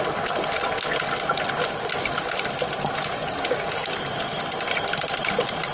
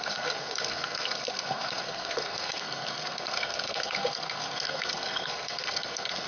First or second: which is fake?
second